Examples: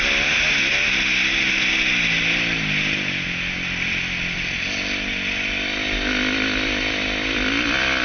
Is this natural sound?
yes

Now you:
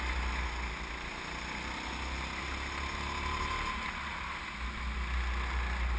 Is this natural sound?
yes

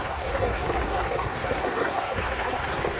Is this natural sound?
no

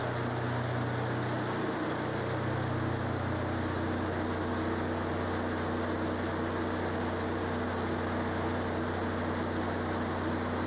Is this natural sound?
yes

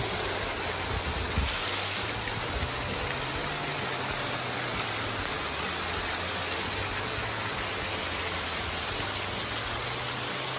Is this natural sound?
yes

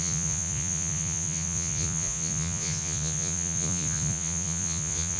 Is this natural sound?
no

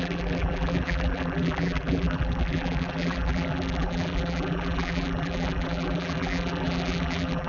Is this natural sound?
no